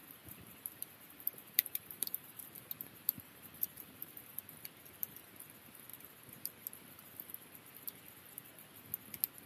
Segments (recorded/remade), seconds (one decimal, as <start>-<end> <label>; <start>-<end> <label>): 0.0-4.2 remade; 4.2-9.5 recorded